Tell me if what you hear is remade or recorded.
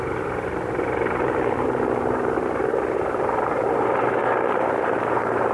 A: remade